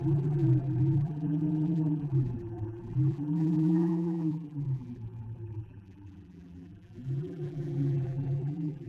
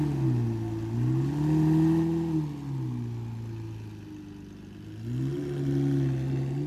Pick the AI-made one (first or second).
first